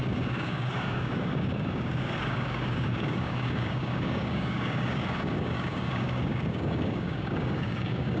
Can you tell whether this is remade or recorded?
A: remade